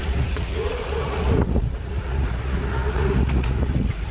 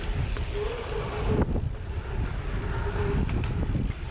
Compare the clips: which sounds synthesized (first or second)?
first